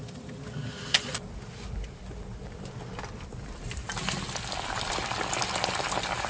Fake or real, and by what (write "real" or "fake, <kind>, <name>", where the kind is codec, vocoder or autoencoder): real